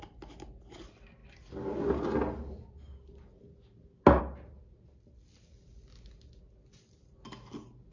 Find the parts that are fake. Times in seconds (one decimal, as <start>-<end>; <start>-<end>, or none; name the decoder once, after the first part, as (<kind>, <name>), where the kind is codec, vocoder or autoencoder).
none